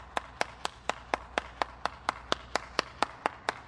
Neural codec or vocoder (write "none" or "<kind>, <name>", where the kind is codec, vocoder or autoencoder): none